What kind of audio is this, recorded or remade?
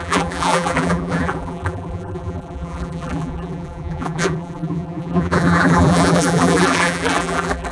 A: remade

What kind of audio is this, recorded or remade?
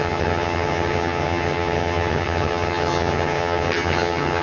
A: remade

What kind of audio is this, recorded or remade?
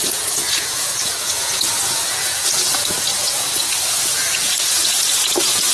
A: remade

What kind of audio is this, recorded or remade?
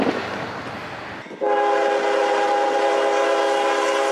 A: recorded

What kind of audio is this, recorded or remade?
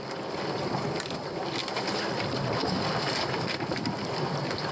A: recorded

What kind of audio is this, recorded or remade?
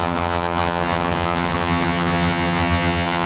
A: remade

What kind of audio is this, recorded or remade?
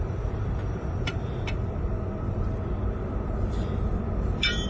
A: remade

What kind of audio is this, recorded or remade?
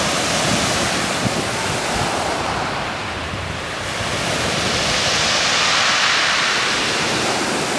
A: recorded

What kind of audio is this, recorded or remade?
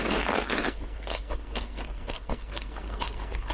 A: remade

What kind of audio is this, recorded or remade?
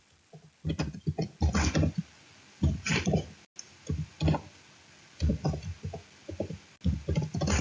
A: recorded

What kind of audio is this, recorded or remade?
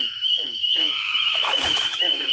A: remade